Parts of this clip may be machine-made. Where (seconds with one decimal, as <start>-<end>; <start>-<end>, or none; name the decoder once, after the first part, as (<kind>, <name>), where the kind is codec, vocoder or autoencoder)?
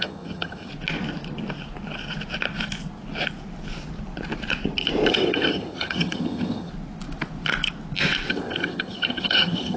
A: 0.0-0.7 (vocoder, HiFi-GAN); 5.1-6.7; 8.3-9.8